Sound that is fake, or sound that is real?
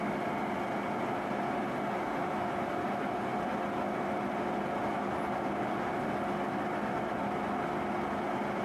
real